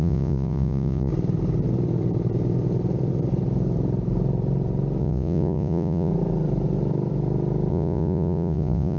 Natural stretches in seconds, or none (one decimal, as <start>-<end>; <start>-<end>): 1.1-5.0; 6.1-7.7